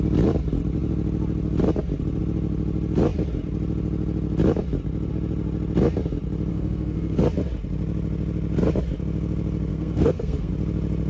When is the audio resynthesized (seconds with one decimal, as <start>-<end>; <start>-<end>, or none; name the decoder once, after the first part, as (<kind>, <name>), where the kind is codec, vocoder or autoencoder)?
6.5-7.2 (codec, SNAC); 9.7-10.5